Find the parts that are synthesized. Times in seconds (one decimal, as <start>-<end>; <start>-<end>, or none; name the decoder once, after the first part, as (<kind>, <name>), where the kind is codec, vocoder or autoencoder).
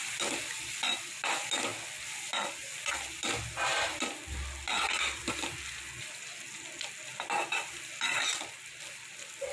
none